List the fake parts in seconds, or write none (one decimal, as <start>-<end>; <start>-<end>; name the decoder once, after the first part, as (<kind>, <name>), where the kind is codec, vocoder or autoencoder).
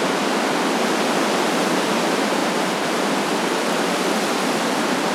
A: 2.4-3.1 (vocoder, BigVGAN v2)